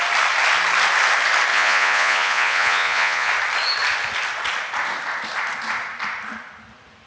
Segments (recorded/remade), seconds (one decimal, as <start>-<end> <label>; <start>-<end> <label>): 0.0-1.5 recorded; 1.5-3.3 remade; 3.3-7.1 recorded